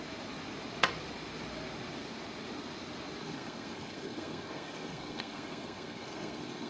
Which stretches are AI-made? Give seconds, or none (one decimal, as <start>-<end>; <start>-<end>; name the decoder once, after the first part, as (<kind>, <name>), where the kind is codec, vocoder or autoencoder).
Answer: 3.2-6.7 (codec, SNAC)